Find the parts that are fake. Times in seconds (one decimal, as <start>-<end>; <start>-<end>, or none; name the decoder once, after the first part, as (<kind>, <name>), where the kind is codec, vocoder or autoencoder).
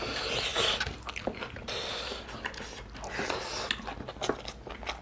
none